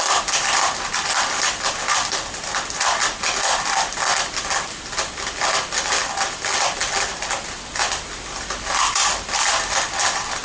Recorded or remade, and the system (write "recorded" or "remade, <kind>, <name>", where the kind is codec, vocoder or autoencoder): recorded